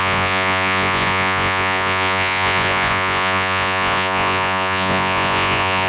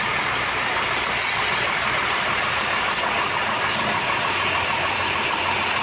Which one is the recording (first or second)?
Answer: second